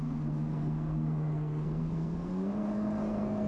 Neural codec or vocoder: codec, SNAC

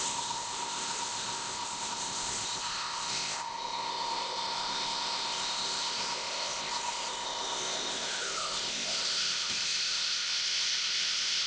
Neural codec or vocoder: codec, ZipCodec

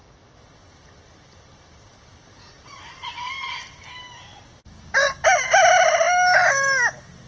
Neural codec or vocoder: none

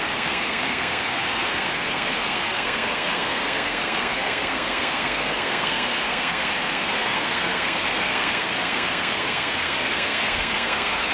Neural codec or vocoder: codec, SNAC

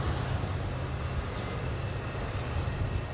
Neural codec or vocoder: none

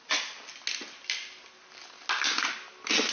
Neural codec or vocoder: none